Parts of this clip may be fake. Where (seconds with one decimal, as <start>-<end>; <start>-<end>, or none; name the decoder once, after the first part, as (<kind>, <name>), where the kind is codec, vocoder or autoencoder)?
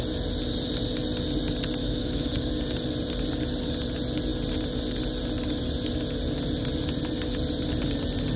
1.8-2.5 (autoencoder, DAC-VAE)